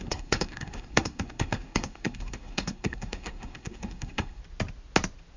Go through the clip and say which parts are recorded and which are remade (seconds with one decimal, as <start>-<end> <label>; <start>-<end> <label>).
0.0-4.4 remade; 4.4-5.4 recorded